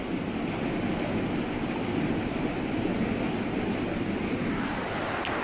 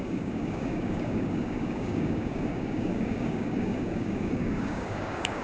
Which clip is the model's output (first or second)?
second